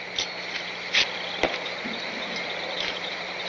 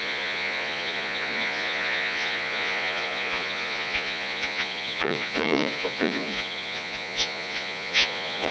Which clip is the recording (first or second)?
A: first